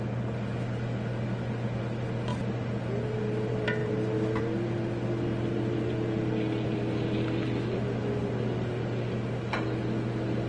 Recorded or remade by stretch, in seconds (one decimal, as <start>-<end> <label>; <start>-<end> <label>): 0.0-10.5 recorded